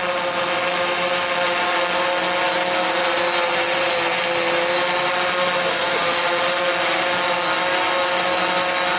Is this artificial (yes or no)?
no